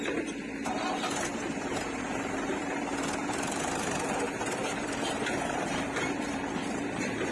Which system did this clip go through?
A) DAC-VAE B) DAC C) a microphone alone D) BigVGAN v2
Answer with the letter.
D